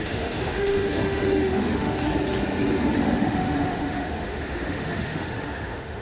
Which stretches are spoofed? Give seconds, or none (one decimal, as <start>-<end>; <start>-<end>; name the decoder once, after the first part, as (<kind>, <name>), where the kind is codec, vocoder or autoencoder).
0.0-2.1 (autoencoder, DAC-VAE); 2.9-6.0